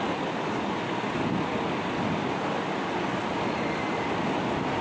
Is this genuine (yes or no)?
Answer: yes